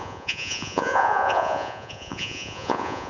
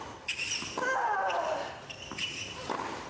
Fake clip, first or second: first